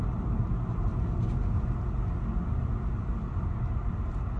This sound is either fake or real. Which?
real